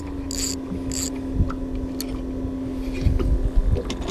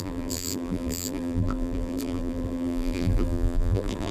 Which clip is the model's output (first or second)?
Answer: second